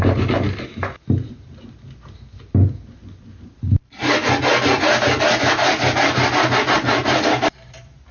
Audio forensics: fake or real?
real